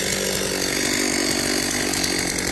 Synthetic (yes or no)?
no